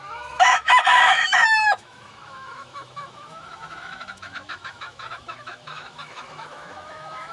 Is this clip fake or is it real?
fake